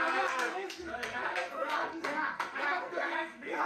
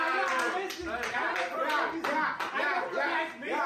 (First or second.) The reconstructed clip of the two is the first